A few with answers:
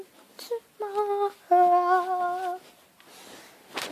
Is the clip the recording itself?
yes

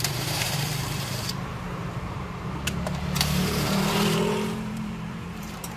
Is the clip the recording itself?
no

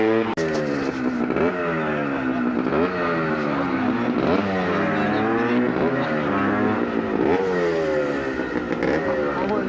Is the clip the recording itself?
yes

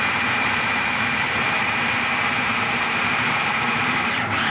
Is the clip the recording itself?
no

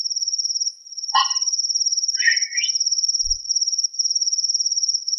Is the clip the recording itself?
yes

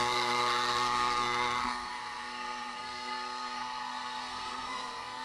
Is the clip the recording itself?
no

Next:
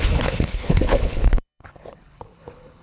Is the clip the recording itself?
no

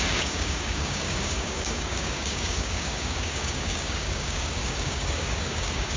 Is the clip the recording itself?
no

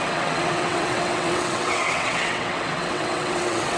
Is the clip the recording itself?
no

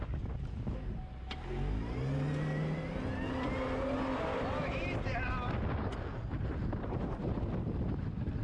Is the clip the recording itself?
yes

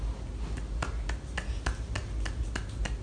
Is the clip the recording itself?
yes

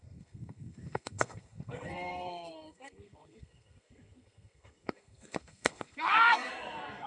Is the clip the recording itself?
no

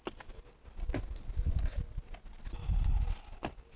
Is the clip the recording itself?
yes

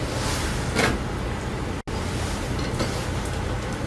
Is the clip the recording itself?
yes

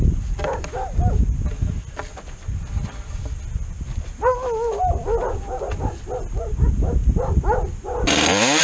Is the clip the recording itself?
yes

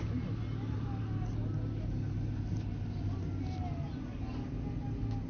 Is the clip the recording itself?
yes